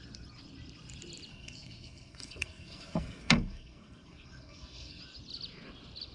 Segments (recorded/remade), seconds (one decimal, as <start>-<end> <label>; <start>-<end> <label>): 0.0-1.3 recorded; 1.3-5.0 remade; 5.0-6.1 recorded

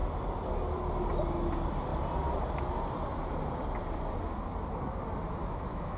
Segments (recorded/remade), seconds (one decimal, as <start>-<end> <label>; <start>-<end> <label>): 0.0-5.4 recorded; 5.4-6.0 remade

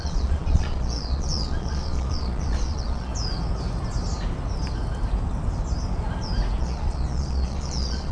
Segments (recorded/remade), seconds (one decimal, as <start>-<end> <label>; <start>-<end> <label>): 0.0-3.1 remade; 3.1-6.6 recorded; 6.6-8.1 remade